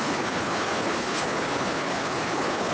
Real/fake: fake